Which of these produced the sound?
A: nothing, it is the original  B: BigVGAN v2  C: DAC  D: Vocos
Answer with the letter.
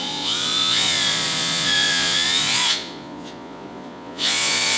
D